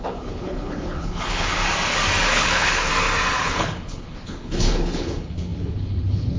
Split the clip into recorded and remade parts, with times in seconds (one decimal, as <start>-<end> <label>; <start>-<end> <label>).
0.0-1.6 remade; 1.6-2.3 recorded; 2.3-2.9 remade; 2.9-3.4 recorded; 3.4-6.4 remade